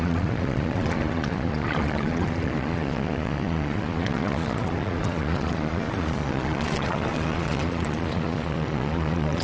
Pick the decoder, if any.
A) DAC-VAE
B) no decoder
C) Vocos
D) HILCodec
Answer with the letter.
C